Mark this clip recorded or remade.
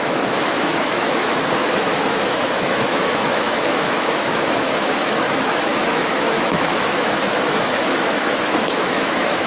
remade